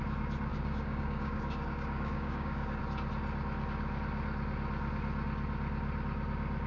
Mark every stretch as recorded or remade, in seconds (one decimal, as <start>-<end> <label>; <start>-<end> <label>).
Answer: 0.0-0.5 recorded; 0.5-2.8 remade; 2.8-6.7 recorded

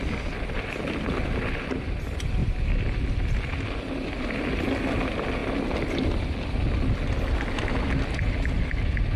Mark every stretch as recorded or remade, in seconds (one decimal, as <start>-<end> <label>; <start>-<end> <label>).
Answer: 0.0-9.2 recorded

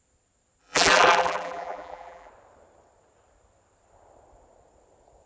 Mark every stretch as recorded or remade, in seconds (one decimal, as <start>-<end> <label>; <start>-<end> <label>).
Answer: 0.0-0.6 recorded; 0.6-2.3 remade; 2.3-5.3 recorded